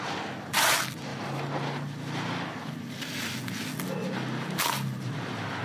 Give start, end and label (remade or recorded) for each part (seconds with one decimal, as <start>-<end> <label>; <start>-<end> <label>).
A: 0.0-4.0 recorded; 4.0-4.6 remade; 4.6-5.6 recorded